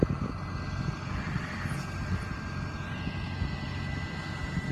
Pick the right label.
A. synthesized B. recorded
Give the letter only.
B